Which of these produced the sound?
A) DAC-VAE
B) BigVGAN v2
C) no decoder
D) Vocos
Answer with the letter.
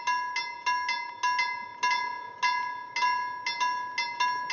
C